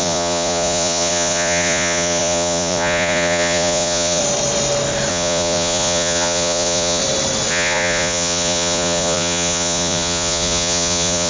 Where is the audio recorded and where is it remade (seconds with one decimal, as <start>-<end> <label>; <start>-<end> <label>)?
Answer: 0.0-4.2 remade; 4.2-5.1 recorded; 5.1-7.0 remade; 7.0-7.5 recorded; 7.5-11.3 remade